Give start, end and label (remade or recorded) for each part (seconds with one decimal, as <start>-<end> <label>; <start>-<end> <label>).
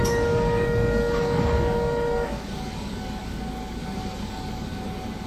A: 0.0-5.3 remade